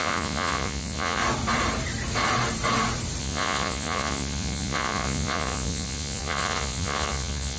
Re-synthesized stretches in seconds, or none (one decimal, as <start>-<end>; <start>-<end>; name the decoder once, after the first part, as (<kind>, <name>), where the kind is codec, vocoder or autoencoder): 0.0-1.2 (vocoder, Vocos); 3.2-7.6